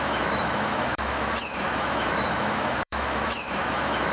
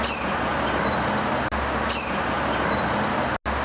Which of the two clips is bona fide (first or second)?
second